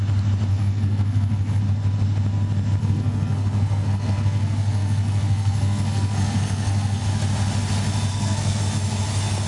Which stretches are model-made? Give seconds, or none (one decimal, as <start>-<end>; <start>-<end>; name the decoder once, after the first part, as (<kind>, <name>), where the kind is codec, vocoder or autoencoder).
0.5-1.6 (codec, SNAC); 2.8-7.0; 8.1-8.6